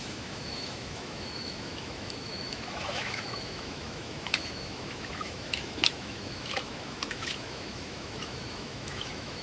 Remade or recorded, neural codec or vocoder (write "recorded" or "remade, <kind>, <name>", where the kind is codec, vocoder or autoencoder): remade, autoencoder, DAC-VAE